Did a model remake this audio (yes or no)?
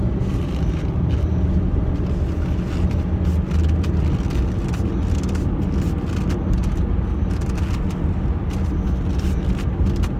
no